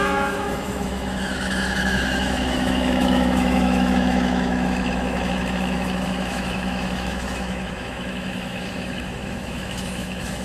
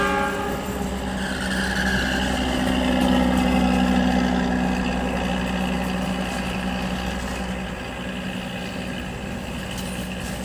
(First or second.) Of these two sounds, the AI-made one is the first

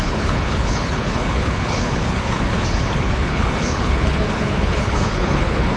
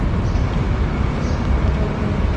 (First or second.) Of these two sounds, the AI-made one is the first